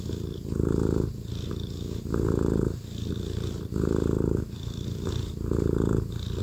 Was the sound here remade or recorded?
recorded